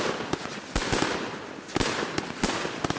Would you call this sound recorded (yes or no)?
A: yes